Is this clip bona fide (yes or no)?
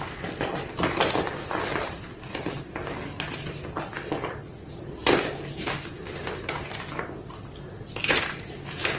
yes